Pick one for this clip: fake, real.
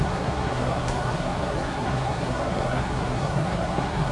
fake